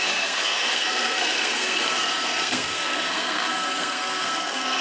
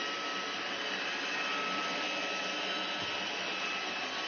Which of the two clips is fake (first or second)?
first